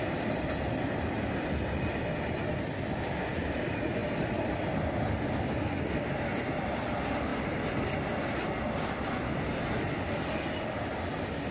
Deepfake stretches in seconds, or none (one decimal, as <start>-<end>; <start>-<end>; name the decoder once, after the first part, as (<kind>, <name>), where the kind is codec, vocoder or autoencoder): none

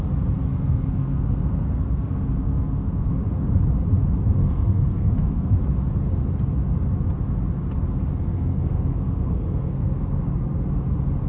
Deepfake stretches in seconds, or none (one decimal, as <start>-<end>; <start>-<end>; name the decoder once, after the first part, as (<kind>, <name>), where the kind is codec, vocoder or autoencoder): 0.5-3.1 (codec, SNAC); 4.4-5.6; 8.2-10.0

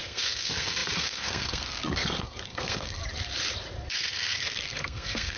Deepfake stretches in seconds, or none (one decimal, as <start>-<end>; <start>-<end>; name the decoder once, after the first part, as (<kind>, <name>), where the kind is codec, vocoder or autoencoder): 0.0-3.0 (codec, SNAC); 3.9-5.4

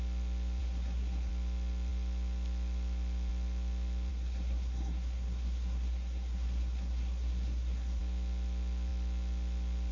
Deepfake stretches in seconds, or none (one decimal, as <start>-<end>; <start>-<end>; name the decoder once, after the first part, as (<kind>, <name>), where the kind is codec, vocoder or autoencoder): 0.6-1.3 (codec, SNAC); 4.1-8.0

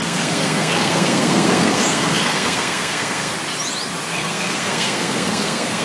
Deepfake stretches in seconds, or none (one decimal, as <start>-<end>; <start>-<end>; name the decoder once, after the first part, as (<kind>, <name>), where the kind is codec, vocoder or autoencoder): 0.0-3.3 (codec, SNAC); 4.1-5.8